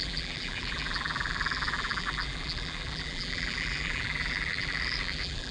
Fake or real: fake